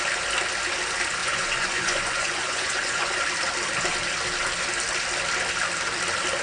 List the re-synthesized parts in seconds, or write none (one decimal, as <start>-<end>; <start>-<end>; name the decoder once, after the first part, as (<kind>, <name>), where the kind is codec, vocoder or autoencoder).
1.2-3.1 (vocoder, Vocos)

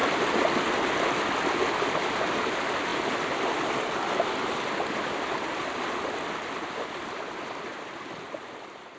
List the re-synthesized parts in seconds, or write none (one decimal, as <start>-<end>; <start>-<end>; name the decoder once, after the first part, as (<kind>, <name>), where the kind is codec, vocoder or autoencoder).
none

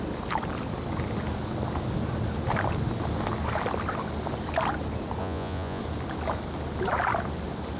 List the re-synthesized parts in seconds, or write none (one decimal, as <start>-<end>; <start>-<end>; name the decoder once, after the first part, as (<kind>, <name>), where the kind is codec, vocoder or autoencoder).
5.2-5.8 (vocoder, Vocos)

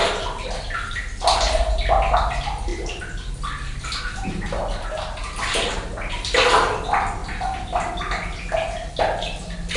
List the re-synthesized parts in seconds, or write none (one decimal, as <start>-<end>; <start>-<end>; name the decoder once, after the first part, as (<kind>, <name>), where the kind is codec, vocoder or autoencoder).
none

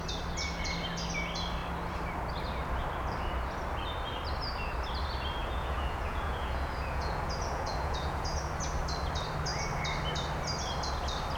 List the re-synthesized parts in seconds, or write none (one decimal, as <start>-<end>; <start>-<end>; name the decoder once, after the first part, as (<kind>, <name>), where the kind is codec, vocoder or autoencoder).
5.4-8.4 (vocoder, Vocos)

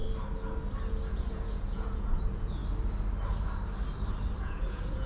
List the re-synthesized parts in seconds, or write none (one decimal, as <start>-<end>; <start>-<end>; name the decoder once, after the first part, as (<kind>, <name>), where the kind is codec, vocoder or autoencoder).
1.1-2.6 (vocoder, Vocos); 4.4-5.1

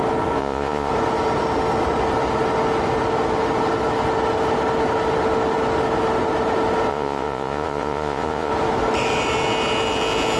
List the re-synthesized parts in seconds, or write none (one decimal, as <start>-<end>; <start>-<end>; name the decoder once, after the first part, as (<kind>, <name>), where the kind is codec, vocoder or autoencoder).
0.4-0.9 (vocoder, Vocos); 6.9-8.5